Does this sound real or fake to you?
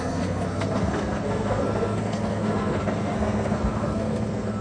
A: fake